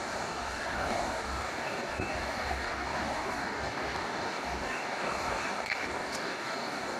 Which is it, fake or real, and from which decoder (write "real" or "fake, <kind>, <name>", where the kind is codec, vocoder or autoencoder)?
fake, codec, DAC